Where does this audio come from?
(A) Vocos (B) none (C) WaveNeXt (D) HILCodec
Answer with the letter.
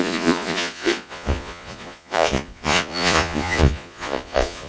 A